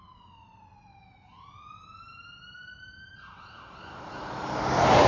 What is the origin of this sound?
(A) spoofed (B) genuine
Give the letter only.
B